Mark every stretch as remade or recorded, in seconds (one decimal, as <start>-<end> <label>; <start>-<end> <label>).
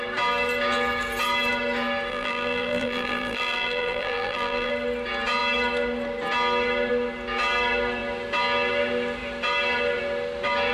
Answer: 0.0-2.1 recorded; 2.1-4.7 remade; 4.7-10.7 recorded